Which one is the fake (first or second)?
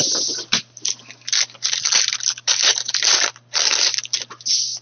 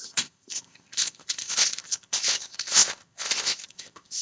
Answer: second